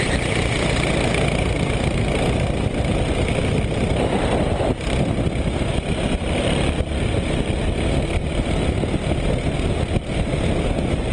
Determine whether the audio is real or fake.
real